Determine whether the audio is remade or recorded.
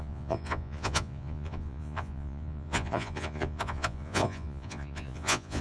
remade